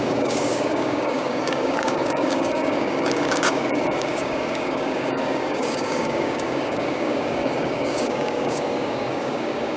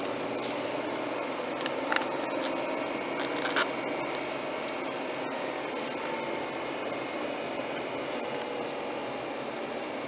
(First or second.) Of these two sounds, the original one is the second